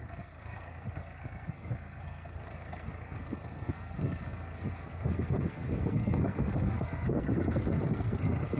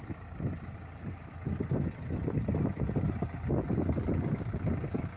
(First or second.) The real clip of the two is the second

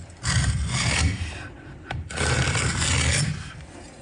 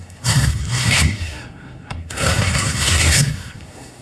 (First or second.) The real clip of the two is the first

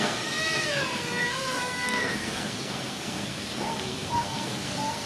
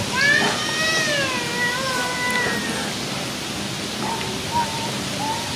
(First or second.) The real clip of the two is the second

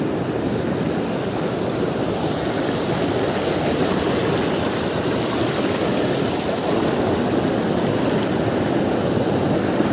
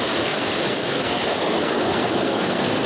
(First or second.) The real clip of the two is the first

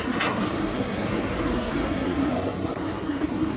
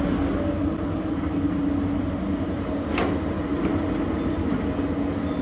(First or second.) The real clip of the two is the second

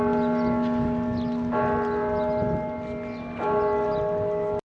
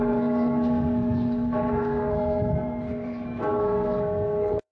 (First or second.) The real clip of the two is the first